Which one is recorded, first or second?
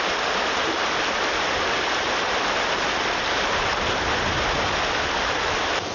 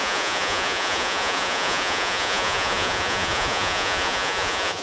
first